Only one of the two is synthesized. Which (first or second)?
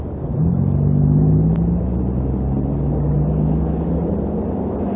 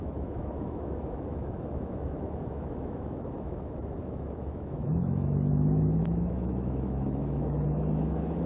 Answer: second